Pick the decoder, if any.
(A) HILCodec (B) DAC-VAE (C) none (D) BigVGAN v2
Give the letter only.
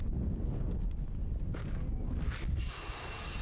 C